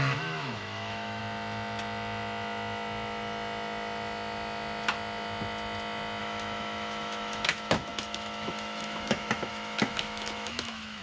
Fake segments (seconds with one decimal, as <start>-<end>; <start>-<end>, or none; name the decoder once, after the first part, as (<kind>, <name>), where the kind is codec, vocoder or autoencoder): 0.0-1.2 (autoencoder, DAC-VAE); 6.2-11.0